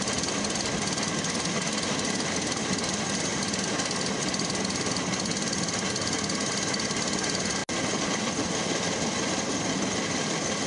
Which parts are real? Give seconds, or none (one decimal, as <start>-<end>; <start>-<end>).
0.0-10.7